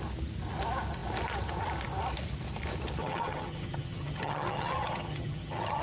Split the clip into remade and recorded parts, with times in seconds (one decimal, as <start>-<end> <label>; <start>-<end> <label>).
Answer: 0.0-3.0 recorded; 3.0-5.8 remade